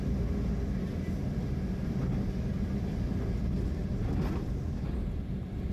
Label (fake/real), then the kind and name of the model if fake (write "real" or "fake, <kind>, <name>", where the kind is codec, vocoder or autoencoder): real